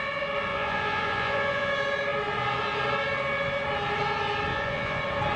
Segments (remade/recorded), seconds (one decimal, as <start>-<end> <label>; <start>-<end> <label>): 0.0-0.5 recorded; 0.5-1.7 remade; 1.7-4.5 recorded; 4.5-5.0 remade; 5.0-5.4 recorded